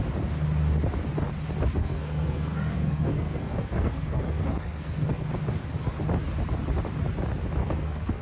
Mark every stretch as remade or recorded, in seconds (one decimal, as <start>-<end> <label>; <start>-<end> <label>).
0.0-1.8 recorded; 1.8-5.3 remade; 5.3-7.6 recorded; 7.6-8.2 remade